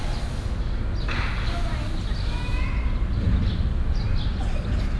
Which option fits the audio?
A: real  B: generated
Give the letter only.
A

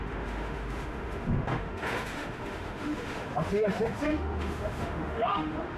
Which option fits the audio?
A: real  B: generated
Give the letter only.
B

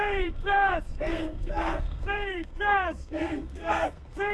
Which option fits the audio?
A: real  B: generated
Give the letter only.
B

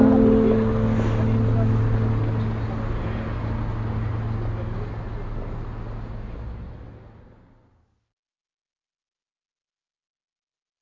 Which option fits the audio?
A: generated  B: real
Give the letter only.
B